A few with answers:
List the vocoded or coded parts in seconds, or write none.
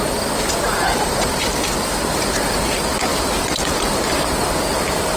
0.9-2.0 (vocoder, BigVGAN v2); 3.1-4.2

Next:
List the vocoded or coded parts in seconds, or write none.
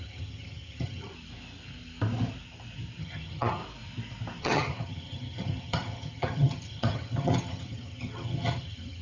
0.0-1.1 (vocoder, HiFi-GAN); 3.0-3.6; 4.4-9.0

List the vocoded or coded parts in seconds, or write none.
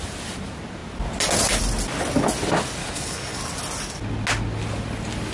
2.8-3.4 (codec, DAC)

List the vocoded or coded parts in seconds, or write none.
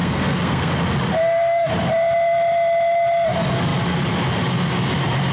0.0-0.7 (codec, SNAC); 1.2-1.7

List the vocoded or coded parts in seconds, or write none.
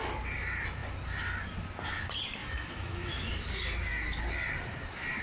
2.4-3.3 (autoencoder, DAC-VAE)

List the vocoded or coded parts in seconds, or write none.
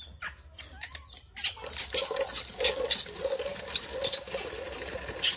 none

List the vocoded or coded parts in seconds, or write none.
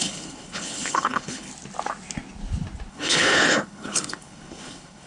0.0-1.5 (codec, HILCodec); 2.9-5.1